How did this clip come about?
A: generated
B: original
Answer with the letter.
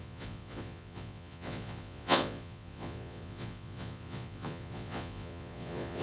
A